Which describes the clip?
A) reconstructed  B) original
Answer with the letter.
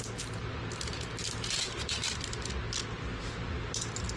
B